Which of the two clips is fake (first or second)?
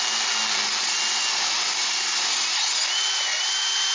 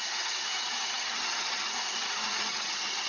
second